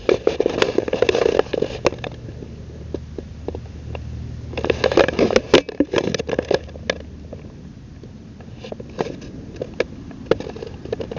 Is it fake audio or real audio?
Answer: real